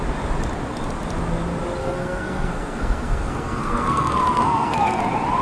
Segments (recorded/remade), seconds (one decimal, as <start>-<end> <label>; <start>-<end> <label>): 0.0-1.8 recorded; 1.8-5.0 remade; 5.0-5.4 recorded

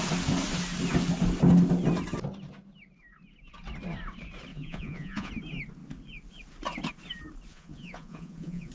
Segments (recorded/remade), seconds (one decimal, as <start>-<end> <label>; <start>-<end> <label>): 0.0-4.5 recorded; 4.5-5.3 remade; 5.3-7.5 recorded; 7.5-8.7 remade

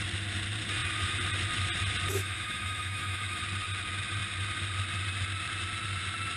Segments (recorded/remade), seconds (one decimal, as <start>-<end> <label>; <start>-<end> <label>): 0.0-2.2 recorded; 2.2-3.4 remade; 3.4-6.4 recorded

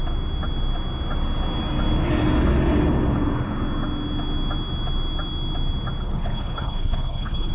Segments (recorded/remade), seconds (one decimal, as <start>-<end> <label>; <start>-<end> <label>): 0.0-6.0 recorded; 6.0-7.5 remade

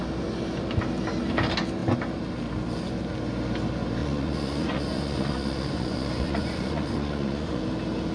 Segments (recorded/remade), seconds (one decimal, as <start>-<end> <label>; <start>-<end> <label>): 0.0-4.0 recorded; 4.0-7.6 remade; 7.6-8.1 recorded